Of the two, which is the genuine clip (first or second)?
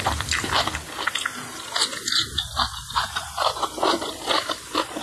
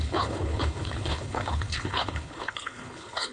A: first